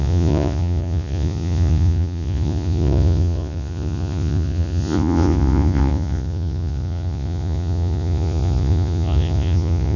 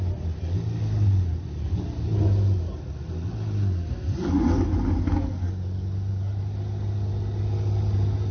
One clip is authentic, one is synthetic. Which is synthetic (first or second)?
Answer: first